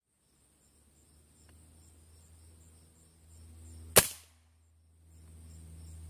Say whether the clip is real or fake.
real